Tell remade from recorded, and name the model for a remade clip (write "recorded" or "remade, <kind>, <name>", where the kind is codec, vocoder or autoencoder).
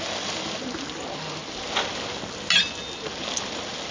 recorded